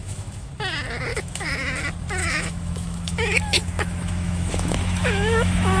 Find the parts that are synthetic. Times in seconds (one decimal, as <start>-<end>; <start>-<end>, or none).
0.0-0.5; 1.1-1.6; 2.2-5.8